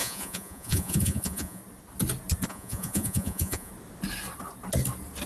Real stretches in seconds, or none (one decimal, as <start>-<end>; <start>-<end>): 1.6-2.5; 3.7-5.3